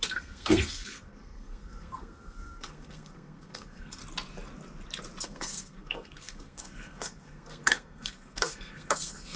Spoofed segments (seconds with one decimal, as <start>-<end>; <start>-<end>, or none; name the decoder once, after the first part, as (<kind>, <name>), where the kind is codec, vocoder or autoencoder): 0.0-4.0 (codec, SNAC); 5.2-9.4